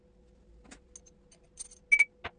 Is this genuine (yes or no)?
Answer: yes